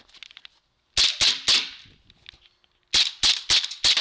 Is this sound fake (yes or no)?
no